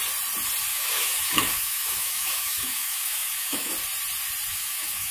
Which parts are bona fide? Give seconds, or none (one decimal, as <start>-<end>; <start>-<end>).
0.0-0.7; 3.7-4.5